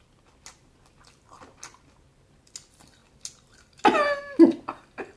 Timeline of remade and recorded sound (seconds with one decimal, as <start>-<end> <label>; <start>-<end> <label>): 0.0-5.2 recorded